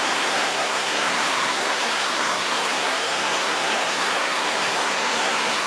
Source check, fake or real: fake